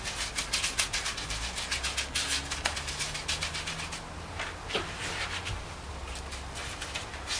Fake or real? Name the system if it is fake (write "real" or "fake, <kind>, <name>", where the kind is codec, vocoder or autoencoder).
real